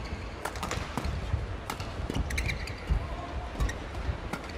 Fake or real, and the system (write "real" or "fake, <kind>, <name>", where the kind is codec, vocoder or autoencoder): real